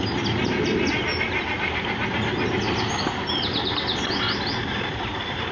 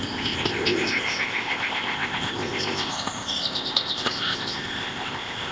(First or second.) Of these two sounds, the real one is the first